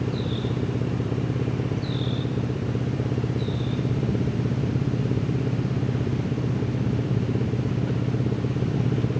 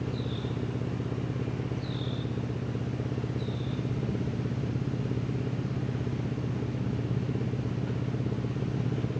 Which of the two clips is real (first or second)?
second